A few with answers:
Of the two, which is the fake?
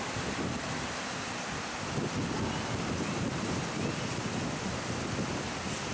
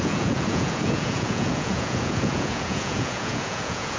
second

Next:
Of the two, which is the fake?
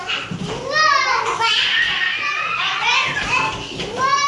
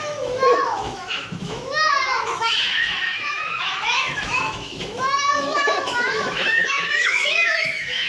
second